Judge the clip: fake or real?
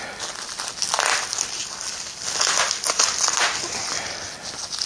real